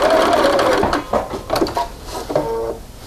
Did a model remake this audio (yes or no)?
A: no